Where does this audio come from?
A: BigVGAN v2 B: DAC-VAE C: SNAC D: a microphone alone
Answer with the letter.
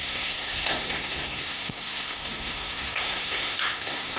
C